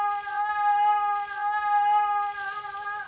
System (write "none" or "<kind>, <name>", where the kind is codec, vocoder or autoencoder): none